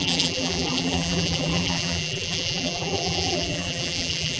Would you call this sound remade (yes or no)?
yes